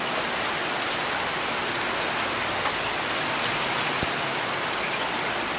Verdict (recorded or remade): recorded